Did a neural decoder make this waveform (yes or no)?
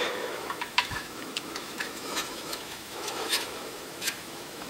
yes